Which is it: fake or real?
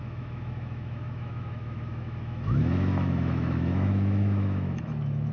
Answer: fake